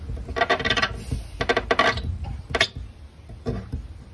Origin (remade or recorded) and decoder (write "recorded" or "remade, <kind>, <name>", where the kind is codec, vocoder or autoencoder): recorded